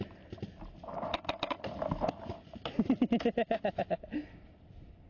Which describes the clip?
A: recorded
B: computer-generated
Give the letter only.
A